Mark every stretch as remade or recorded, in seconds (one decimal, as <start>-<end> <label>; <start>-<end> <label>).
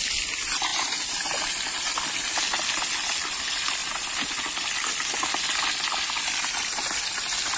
0.0-7.6 recorded